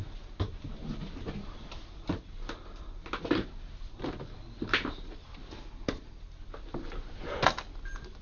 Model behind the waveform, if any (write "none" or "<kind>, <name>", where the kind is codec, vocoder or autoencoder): none